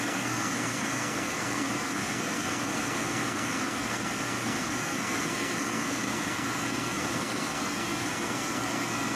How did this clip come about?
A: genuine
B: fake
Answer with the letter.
B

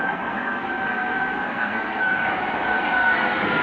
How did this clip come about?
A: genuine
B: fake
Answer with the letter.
B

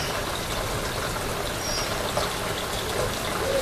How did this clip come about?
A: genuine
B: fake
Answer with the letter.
A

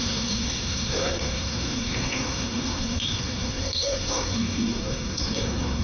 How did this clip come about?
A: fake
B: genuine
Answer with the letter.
A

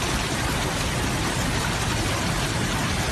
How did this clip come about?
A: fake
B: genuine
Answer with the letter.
B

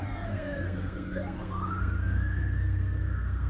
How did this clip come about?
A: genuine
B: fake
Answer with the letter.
B